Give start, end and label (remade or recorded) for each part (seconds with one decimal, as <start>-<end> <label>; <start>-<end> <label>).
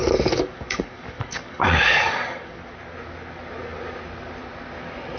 0.0-2.6 remade; 2.6-5.2 recorded